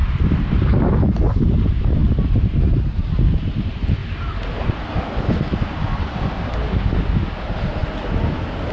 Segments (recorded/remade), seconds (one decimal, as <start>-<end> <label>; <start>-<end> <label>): 0.0-8.7 recorded